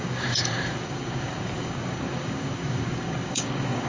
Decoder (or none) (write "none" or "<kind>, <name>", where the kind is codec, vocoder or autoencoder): codec, DAC